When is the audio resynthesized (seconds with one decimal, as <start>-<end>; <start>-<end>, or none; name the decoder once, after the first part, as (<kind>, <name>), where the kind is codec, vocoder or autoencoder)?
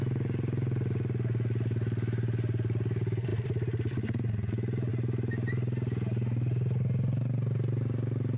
none